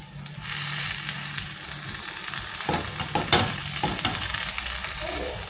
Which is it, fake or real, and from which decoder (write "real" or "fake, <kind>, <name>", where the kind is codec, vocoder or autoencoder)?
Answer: fake, vocoder, BigVGAN v2